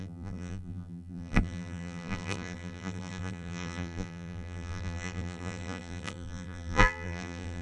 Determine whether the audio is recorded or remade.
remade